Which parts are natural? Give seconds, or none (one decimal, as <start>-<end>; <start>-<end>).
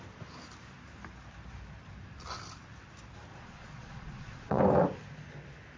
0.0-3.3; 4.6-5.8